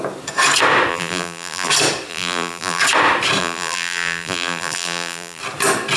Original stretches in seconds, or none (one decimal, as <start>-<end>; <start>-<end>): 0.0-0.9; 1.7-2.1; 2.8-3.4; 5.4-6.0